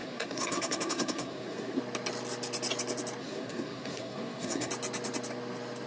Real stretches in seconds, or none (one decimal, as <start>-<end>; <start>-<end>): 1.8-3.2; 4.7-5.9